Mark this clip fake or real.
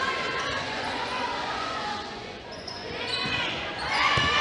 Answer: fake